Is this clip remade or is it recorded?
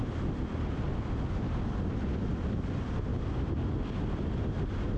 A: recorded